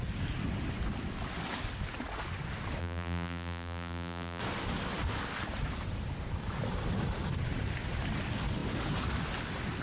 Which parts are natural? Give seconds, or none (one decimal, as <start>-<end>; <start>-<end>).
0.0-2.8; 4.4-9.8